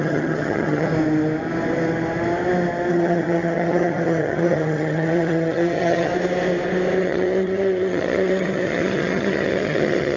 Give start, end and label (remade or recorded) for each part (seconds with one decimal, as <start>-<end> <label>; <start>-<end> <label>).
0.0-0.9 remade; 0.9-2.9 recorded; 2.9-6.1 remade; 6.1-7.0 recorded; 7.0-10.2 remade